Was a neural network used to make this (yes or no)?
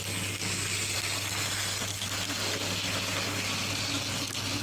no